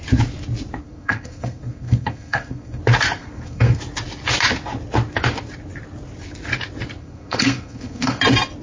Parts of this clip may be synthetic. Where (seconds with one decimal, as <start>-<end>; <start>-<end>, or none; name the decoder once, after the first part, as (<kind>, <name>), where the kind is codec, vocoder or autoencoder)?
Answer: 0.8-2.8 (codec, SNAC); 3.2-3.8; 7.0-8.2